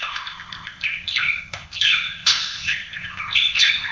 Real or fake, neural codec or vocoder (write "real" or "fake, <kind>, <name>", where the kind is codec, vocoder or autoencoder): fake, codec, ZipCodec